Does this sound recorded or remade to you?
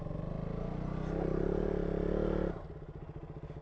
recorded